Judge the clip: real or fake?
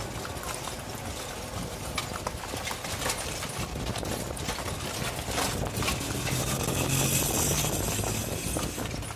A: real